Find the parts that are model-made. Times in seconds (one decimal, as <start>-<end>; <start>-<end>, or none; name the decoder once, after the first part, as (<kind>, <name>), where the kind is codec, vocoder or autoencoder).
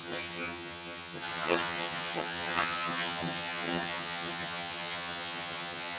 0.0-6.0 (vocoder, HiFi-GAN)